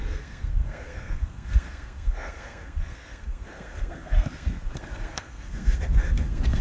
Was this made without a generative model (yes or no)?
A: no